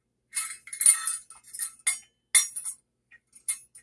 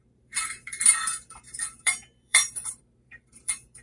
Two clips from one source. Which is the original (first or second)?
first